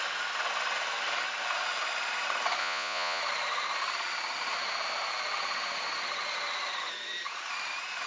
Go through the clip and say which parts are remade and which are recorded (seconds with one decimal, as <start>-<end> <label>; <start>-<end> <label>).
0.0-2.6 recorded; 2.6-3.2 remade; 3.2-8.1 recorded